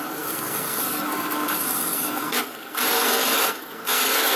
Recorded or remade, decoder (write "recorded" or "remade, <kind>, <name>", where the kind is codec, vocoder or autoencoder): remade, codec, SNAC